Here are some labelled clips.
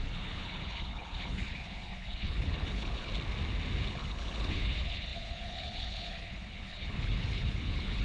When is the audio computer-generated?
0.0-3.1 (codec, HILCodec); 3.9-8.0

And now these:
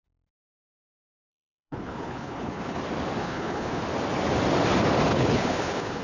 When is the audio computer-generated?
1.3-2.8 (codec, HILCodec); 3.2-3.8; 5.1-6.0

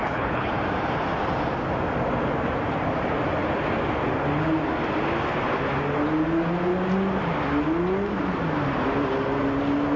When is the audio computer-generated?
0.0-0.5 (codec, HILCodec)

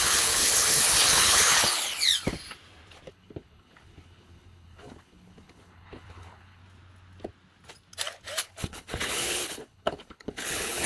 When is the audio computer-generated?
0.0-2.1 (codec, HILCodec); 3.1-6.6; 8.4-10.9

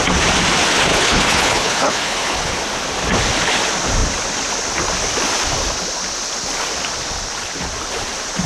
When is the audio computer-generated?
0.9-2.5 (codec, HILCodec)

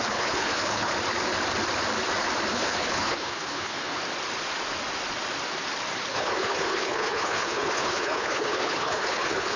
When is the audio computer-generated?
0.0-0.9 (codec, HILCodec); 2.5-4.0; 6.1-9.6